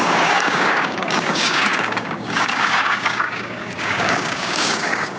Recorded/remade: remade